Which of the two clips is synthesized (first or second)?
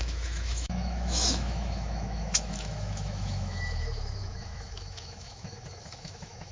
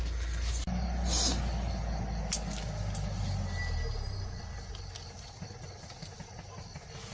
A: first